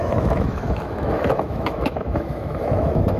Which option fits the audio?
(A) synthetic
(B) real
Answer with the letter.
A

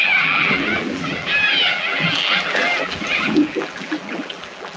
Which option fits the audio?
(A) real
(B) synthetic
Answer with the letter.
B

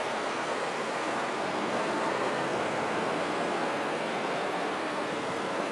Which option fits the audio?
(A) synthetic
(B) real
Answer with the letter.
A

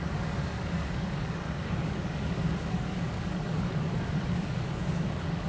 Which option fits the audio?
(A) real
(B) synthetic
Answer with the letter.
B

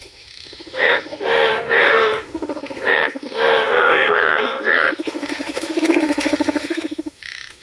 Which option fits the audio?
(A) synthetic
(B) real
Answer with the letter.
A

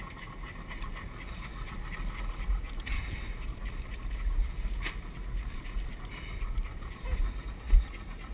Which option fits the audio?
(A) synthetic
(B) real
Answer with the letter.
B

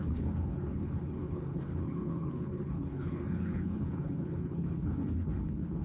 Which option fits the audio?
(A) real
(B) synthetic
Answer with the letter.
B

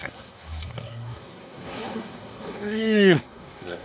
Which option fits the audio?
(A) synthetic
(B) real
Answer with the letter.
A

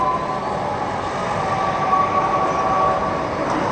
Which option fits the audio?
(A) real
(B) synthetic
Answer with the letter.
A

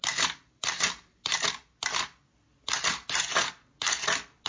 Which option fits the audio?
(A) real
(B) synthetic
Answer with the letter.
A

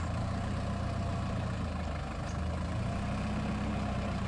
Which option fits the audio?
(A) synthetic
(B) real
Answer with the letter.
B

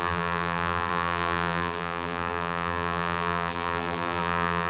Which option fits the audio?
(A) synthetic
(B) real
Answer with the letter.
A